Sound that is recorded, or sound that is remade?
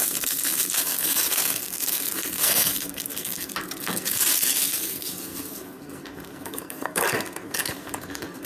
remade